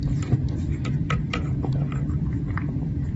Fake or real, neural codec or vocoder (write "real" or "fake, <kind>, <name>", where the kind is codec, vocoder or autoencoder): fake, vocoder, BigVGAN v2